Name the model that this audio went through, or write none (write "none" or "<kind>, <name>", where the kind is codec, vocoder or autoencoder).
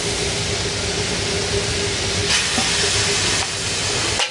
none